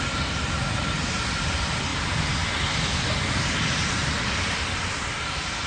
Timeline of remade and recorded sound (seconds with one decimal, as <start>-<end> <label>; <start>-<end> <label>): 0.0-5.7 recorded